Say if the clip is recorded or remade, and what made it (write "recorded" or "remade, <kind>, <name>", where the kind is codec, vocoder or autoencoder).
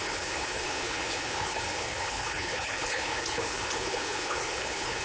remade, codec, HILCodec